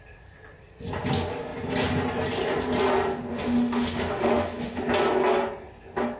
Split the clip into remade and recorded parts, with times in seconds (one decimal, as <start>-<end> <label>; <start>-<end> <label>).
0.0-3.3 recorded; 3.3-4.8 remade; 4.8-6.2 recorded